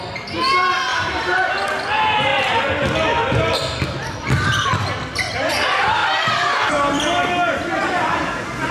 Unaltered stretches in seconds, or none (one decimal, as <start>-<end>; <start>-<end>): 0.0-0.9; 1.5-6.0; 6.5-8.7